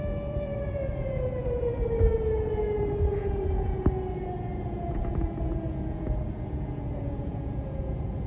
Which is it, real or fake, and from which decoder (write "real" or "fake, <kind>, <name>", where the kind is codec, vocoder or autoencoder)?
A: fake, vocoder, Vocos